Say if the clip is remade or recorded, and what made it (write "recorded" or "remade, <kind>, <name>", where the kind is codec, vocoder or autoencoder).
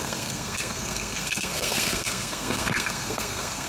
remade, codec, SNAC